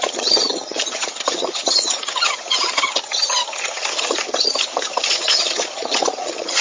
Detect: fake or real fake